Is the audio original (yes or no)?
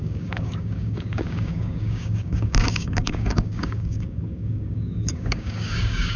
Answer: no